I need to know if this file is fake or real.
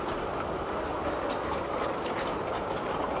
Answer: real